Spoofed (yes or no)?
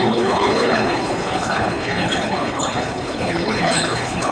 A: yes